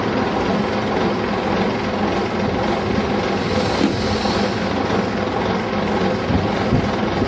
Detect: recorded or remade recorded